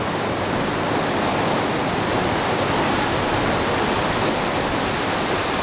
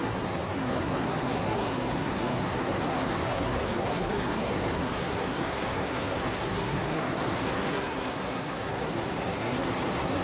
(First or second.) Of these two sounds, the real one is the first